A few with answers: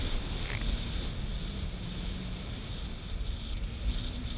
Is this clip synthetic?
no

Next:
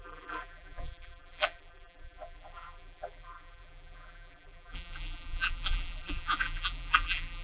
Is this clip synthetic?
yes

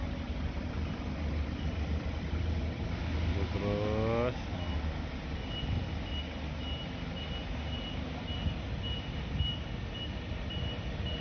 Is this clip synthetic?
no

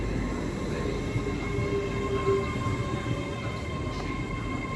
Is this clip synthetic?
no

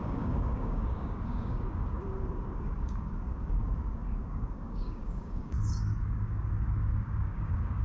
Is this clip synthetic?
yes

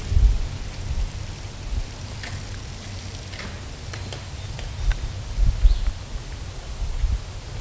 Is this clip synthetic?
no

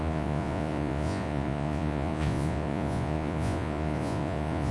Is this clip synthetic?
yes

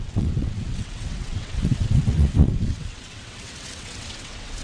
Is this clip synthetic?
yes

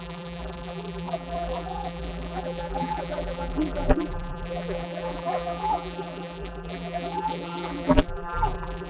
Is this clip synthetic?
yes